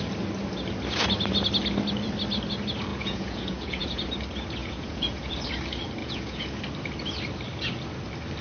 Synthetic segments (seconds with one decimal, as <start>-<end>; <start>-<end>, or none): 2.9-4.1; 4.6-5.3; 6.0-6.6